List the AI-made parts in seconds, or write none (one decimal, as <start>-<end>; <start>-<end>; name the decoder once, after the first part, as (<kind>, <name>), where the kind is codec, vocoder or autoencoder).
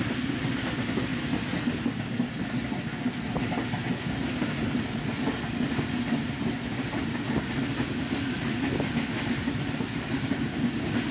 none